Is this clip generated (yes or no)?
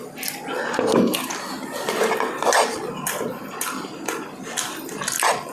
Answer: no